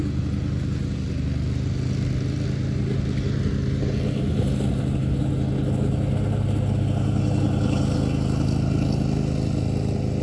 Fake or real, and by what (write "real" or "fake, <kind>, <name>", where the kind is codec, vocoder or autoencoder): real